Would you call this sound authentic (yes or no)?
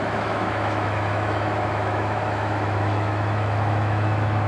no